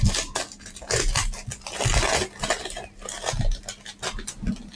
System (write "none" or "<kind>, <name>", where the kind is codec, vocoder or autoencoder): none